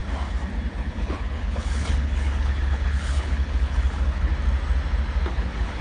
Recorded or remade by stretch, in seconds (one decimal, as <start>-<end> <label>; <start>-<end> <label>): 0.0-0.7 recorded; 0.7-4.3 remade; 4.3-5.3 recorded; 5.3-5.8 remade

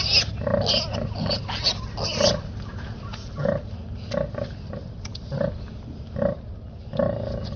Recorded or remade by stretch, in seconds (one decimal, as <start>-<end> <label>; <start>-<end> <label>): 0.0-7.6 recorded

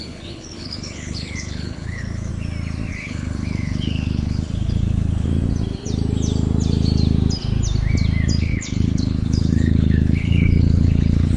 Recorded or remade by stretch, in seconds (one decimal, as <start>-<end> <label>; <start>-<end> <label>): 0.0-2.3 remade; 2.3-2.9 recorded; 2.9-5.3 remade; 5.3-8.4 recorded; 8.4-11.4 remade